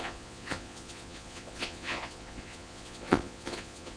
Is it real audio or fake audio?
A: fake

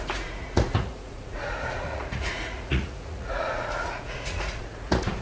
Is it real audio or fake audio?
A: fake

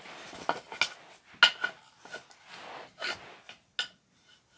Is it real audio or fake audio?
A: real